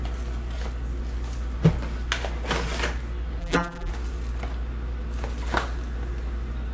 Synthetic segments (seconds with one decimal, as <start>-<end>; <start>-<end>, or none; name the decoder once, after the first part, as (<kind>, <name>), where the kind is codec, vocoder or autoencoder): 3.4-3.9 (vocoder, BigVGAN v2)